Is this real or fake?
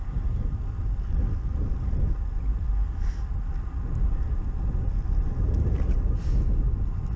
real